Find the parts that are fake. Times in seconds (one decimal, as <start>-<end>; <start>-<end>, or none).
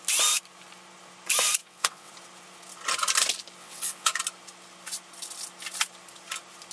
1.6-2.1; 3.6-4.2